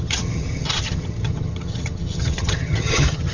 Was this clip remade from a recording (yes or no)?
yes